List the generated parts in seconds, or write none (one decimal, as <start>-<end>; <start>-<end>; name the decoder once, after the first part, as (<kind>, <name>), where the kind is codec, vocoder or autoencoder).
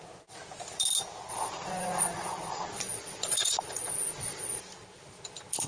1.3-4.6 (vocoder, Vocos)